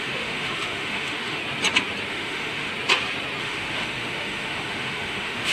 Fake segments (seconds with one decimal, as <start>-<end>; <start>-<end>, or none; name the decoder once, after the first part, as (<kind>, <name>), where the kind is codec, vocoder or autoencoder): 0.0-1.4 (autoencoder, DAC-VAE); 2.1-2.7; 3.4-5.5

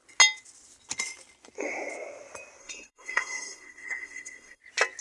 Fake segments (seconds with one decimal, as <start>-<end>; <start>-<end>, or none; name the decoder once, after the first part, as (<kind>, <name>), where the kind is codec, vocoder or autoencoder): 2.6-4.6 (codec, SNAC)

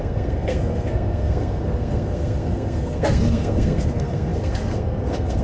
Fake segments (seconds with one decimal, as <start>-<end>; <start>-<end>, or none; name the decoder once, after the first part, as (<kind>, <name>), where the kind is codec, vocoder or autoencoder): 0.0-5.4 (codec, SNAC)